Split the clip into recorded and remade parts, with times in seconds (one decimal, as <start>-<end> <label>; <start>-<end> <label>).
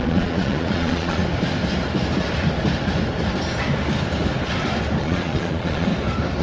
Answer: 0.0-1.2 remade; 1.2-5.0 recorded; 5.0-5.9 remade; 5.9-6.4 recorded